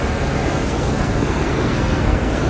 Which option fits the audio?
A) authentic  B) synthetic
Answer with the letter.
B